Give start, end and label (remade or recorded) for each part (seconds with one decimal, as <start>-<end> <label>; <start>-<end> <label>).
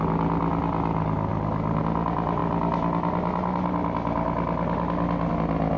0.0-5.8 recorded